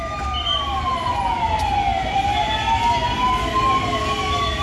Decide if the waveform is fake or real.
real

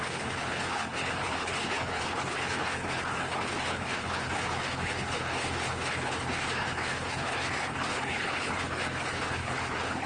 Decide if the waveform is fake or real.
fake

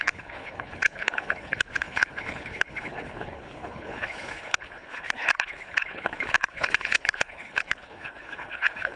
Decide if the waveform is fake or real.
fake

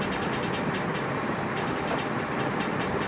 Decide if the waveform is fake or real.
real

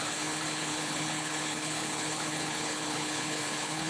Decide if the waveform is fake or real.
fake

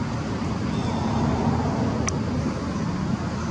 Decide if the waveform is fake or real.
real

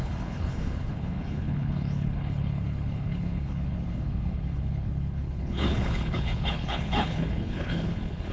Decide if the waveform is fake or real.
fake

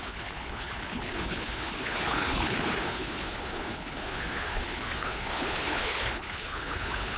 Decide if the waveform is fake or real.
fake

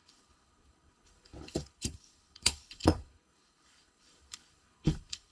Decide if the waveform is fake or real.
fake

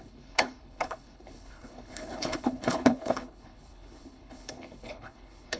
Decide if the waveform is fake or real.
fake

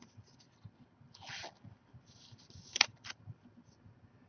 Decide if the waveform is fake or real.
real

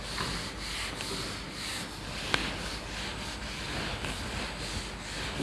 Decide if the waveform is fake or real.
real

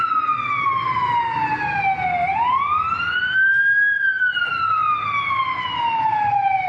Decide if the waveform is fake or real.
real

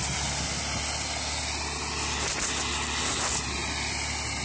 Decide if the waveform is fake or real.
real